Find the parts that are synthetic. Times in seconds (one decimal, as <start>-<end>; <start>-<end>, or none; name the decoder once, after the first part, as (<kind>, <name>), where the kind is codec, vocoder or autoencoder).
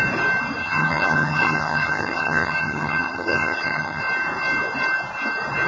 0.6-4.0 (vocoder, HiFi-GAN)